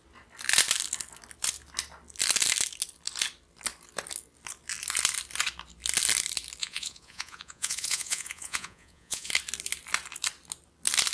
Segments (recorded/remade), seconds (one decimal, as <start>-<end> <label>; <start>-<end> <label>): 0.0-6.6 recorded; 6.6-9.3 remade; 9.3-11.1 recorded